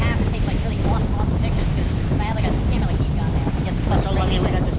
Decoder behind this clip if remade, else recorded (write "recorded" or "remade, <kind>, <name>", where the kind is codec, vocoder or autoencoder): recorded